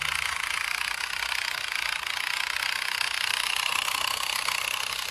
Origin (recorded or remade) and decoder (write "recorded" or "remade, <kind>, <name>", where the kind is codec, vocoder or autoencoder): recorded